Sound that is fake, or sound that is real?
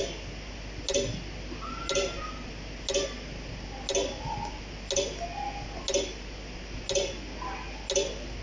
real